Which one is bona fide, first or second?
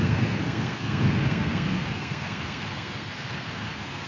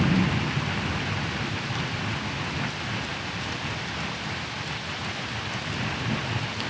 second